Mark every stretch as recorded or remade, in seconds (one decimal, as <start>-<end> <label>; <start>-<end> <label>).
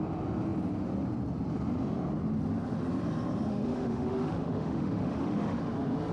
0.0-3.5 recorded; 3.5-5.6 remade; 5.6-6.1 recorded